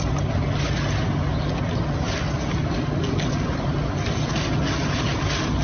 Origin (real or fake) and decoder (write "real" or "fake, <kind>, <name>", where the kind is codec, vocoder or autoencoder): real